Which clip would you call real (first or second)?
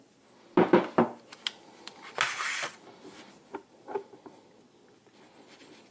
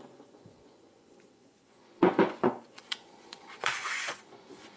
first